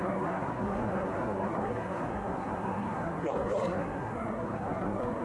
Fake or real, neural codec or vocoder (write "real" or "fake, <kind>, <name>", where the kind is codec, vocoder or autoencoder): fake, codec, SNAC